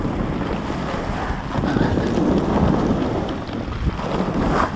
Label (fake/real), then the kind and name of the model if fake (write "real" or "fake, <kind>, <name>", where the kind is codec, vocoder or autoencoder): real